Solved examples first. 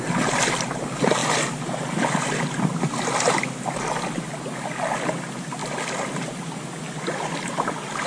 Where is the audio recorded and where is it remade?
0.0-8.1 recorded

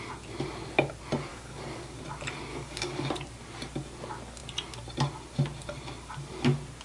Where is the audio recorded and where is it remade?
0.0-1.3 recorded; 1.3-2.0 remade; 2.0-2.5 recorded; 2.5-3.1 remade; 3.1-6.8 recorded